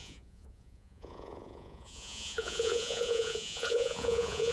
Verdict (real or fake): fake